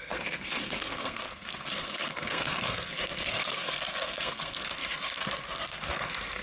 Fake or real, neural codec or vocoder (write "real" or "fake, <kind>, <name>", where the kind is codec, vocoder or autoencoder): fake, codec, SNAC